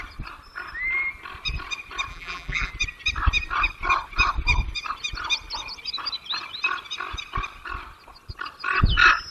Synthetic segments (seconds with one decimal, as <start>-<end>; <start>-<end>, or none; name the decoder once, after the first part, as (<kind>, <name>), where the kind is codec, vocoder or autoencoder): 2.1-2.7 (vocoder, BigVGAN v2)